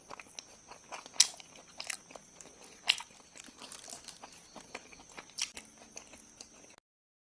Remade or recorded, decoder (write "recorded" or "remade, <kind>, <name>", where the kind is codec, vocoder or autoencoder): recorded